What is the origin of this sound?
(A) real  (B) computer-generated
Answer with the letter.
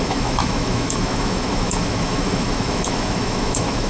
B